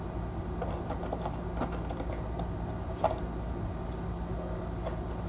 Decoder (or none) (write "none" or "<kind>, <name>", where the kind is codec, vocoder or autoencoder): none